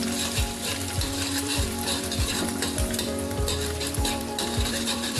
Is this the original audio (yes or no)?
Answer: no